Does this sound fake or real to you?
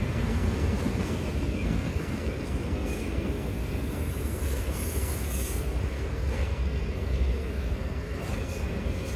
fake